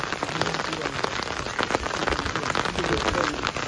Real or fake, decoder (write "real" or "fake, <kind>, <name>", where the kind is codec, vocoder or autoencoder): real